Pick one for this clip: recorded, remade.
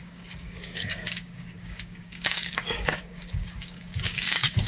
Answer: remade